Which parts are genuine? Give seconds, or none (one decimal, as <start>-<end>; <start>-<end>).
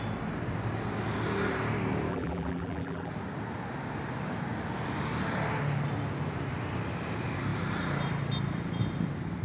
0.0-2.1; 3.1-9.4